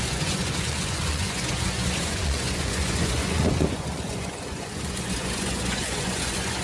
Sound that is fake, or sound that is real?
fake